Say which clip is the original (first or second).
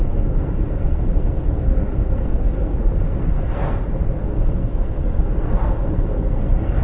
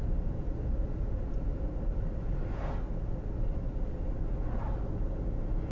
second